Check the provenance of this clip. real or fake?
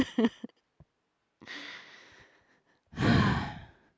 real